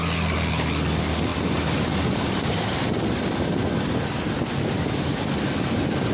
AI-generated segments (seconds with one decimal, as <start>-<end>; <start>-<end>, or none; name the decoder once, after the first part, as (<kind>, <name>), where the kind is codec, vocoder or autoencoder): none